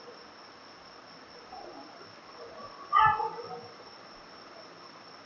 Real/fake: real